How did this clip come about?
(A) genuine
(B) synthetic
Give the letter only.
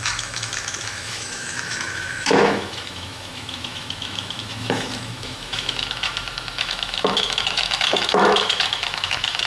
B